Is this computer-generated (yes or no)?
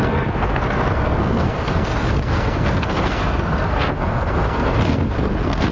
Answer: yes